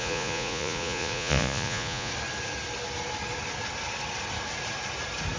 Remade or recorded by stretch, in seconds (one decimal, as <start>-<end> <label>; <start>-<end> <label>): 0.0-2.1 remade; 2.1-5.4 recorded